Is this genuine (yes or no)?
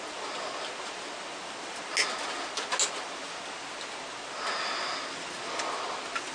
yes